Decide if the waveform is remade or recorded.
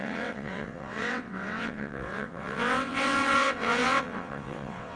remade